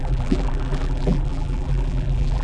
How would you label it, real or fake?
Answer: fake